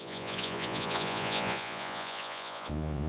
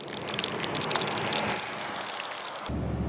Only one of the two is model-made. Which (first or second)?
first